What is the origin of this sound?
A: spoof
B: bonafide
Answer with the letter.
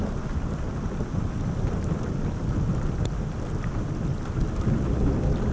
B